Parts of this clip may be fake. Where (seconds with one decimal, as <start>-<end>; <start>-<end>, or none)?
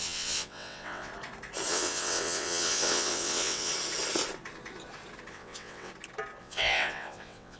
0.0-1.1; 1.7-3.7; 5.3-5.9; 6.4-7.6